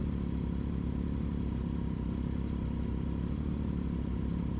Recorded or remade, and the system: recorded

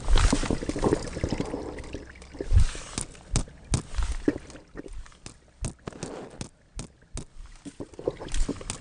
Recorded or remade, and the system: recorded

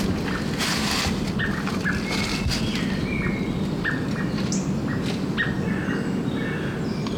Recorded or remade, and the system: recorded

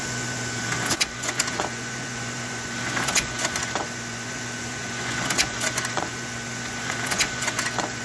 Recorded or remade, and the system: remade, vocoder, Vocos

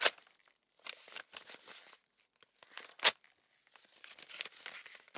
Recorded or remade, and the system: recorded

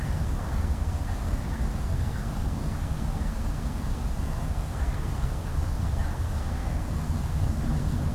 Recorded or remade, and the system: remade, codec, SNAC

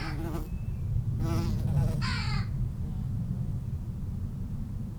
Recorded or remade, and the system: recorded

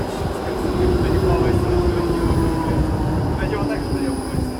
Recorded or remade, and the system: recorded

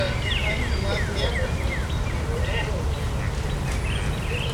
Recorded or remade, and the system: recorded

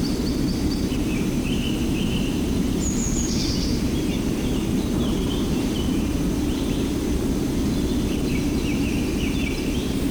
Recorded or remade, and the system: remade, vocoder, BigVGAN v2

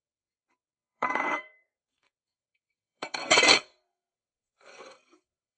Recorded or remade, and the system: remade, codec, SNAC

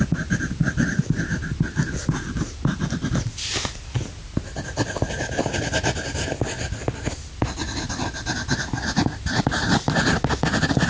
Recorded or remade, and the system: recorded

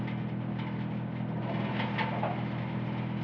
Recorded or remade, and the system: recorded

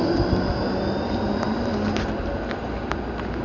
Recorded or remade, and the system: recorded